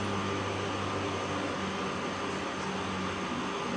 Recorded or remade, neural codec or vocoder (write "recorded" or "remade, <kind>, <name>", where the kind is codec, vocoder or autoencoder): recorded